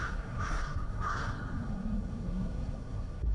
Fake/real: fake